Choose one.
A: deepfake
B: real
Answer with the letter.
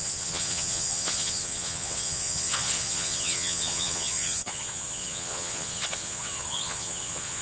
A